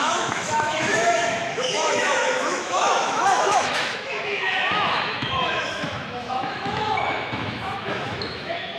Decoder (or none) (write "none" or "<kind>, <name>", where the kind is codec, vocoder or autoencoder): autoencoder, DAC-VAE